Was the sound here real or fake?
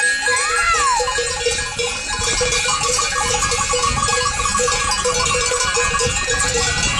real